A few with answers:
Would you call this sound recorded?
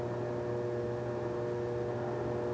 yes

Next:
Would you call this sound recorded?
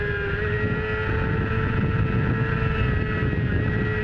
yes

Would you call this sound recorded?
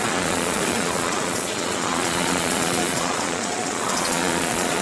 no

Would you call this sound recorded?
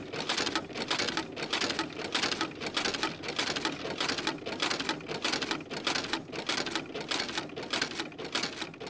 yes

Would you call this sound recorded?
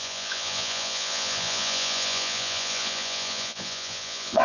no